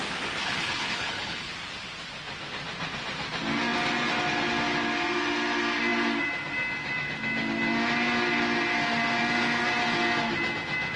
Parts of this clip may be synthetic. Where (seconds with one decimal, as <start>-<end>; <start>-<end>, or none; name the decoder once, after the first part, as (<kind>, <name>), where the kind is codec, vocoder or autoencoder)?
0.4-1.5 (codec, HILCodec)

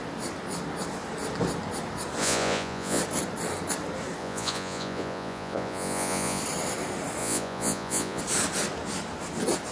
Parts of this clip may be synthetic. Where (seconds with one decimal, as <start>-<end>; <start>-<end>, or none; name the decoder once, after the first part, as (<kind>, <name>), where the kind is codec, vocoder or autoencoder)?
2.2-3.0 (vocoder, Vocos); 4.2-6.4; 7.2-8.2

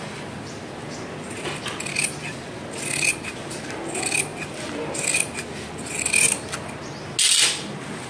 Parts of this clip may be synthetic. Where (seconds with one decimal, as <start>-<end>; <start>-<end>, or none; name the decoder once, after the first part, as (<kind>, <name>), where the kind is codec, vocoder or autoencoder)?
none

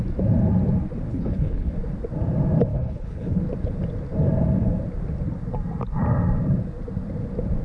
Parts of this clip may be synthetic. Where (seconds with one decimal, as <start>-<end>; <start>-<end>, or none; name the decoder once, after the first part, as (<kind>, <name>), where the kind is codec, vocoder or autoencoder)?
1.1-1.7 (codec, HILCodec); 2.7-3.4

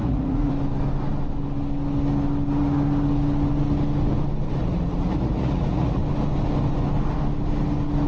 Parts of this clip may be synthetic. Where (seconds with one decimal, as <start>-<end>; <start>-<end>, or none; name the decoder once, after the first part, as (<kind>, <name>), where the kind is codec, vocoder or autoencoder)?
0.0-0.5 (vocoder, Vocos); 4.6-6.0

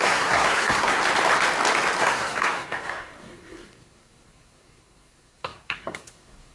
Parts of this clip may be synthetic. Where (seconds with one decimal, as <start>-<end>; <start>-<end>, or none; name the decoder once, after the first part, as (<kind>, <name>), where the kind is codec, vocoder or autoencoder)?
0.0-1.0 (codec, SNAC); 2.0-6.5

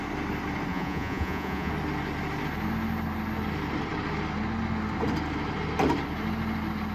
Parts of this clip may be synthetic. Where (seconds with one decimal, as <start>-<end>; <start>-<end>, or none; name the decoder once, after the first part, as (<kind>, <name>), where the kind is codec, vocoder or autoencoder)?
0.7-1.7 (vocoder, Vocos)

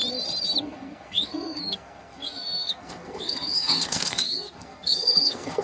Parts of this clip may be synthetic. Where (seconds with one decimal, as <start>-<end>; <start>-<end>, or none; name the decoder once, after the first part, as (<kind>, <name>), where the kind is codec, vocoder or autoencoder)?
0.6-5.6 (codec, SNAC)